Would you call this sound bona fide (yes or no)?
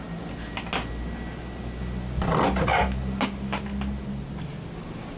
yes